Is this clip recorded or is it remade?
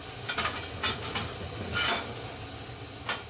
recorded